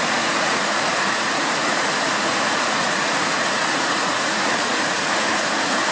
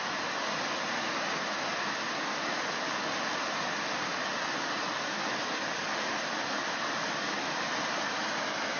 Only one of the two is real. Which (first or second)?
second